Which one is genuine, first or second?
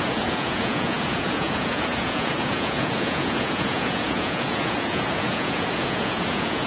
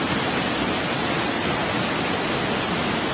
second